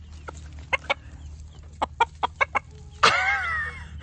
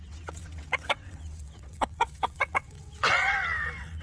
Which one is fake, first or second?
second